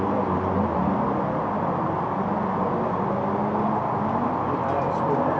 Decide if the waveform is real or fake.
real